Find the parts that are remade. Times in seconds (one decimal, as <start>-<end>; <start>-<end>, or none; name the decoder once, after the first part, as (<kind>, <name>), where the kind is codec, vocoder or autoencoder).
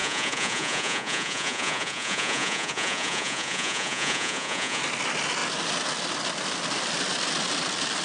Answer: 0.0-4.8 (vocoder, Vocos)